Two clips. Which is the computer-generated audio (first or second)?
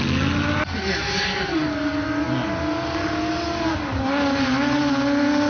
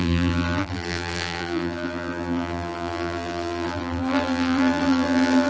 second